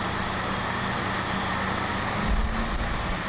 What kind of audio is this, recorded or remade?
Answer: recorded